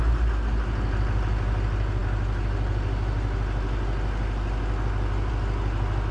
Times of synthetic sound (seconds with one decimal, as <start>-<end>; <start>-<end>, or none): none